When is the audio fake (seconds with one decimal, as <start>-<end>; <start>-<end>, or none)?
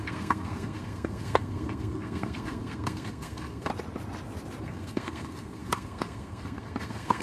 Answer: 0.0-3.7; 4.6-7.2